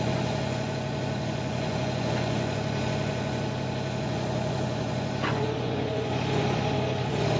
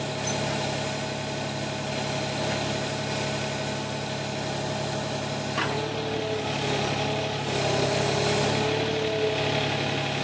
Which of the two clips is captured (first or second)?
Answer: second